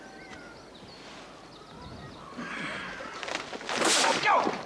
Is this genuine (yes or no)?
yes